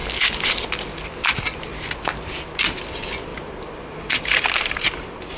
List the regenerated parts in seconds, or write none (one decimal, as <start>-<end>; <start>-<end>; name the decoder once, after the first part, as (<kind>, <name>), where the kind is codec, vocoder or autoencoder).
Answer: 3.3-5.4 (vocoder, BigVGAN v2)